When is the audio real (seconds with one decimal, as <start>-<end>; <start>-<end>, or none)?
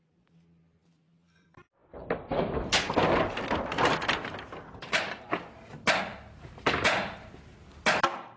0.0-8.4